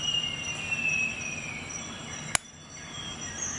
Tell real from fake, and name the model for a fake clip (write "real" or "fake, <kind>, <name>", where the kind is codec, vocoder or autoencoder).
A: real